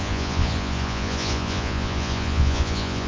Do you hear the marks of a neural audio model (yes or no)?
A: yes